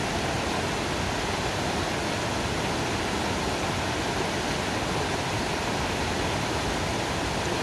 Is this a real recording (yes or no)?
yes